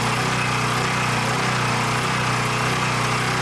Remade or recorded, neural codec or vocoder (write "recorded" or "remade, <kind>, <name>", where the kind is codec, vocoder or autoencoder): recorded